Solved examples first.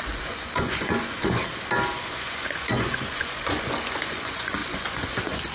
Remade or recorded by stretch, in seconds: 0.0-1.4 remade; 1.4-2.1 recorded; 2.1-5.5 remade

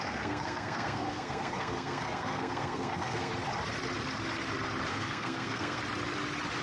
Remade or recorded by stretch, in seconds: 0.0-3.3 remade; 3.3-4.9 recorded; 4.9-5.8 remade; 5.8-6.6 recorded

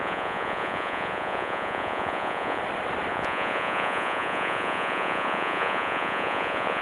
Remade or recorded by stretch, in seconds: 0.0-2.6 remade; 2.6-3.1 recorded; 3.1-6.8 remade

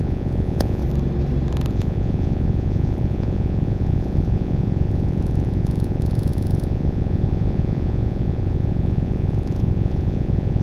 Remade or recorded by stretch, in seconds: 0.0-0.8 remade; 0.8-1.7 recorded; 1.7-10.6 remade

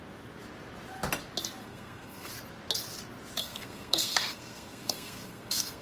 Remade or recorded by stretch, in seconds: 0.0-1.6 recorded; 1.6-2.3 remade; 2.3-3.4 recorded; 3.4-5.8 remade

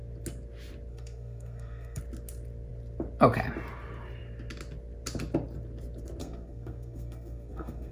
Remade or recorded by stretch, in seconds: 0.0-0.9 recorded; 0.9-2.0 remade; 2.0-6.2 recorded; 6.2-7.9 remade

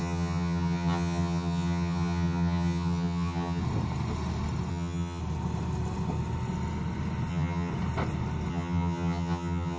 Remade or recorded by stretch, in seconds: 0.0-3.6 remade; 3.6-4.7 recorded; 4.7-5.2 remade; 5.2-7.3 recorded; 7.3-7.7 remade; 7.7-8.5 recorded; 8.5-9.8 remade

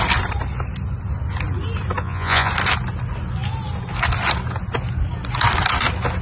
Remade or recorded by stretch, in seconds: 0.0-2.0 recorded; 2.0-2.5 remade; 2.5-6.2 recorded